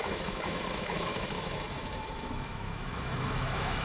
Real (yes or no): no